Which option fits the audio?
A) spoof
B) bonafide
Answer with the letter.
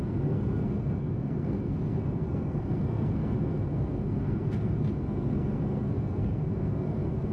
A